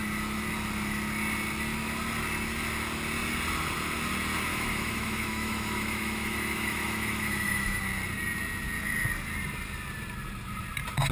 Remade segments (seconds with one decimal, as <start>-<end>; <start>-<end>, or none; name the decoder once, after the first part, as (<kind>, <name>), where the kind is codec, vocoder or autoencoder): 4.5-7.8 (autoencoder, DAC-VAE)